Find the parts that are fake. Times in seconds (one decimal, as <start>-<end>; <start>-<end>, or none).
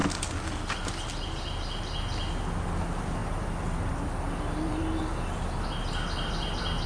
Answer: none